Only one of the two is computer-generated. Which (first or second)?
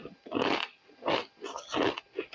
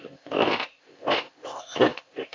second